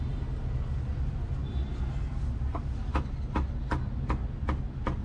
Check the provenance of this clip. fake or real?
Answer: real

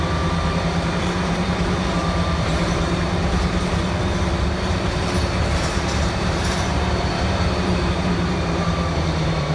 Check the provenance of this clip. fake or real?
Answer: fake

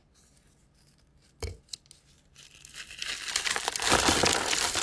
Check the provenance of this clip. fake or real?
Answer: real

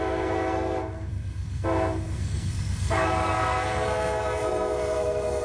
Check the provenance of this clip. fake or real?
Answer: fake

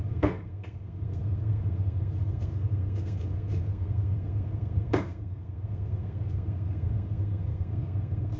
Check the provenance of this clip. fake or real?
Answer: fake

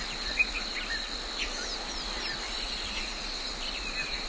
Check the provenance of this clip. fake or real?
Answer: real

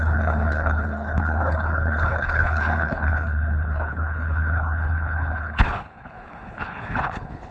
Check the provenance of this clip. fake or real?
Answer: fake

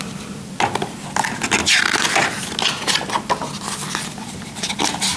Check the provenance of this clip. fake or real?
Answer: real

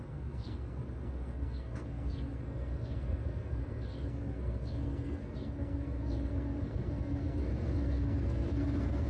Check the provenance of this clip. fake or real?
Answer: fake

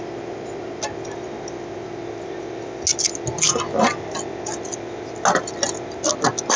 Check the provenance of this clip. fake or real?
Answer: real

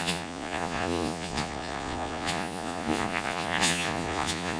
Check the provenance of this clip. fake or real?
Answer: fake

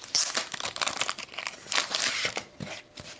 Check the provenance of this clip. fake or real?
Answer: real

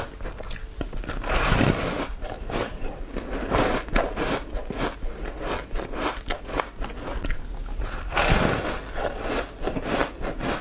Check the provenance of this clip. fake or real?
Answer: real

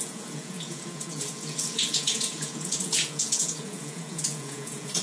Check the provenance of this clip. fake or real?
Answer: fake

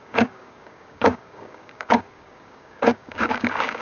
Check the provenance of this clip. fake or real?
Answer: fake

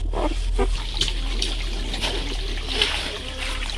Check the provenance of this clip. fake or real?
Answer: real